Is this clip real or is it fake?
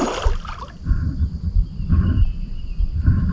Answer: real